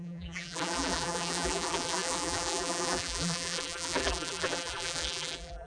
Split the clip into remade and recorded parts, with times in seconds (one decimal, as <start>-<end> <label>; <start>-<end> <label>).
0.0-5.7 remade